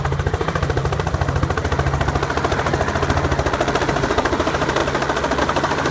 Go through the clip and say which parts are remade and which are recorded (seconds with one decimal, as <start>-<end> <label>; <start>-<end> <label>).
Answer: 0.0-0.8 remade; 0.8-3.8 recorded; 3.8-4.8 remade; 4.8-5.4 recorded; 5.4-5.9 remade